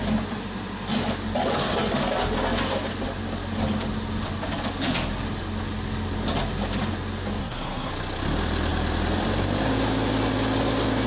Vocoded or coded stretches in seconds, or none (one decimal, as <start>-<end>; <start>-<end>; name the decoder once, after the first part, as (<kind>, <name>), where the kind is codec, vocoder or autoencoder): 7.4-7.9 (codec, SNAC)